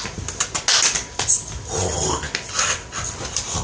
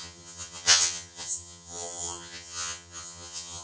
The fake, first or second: second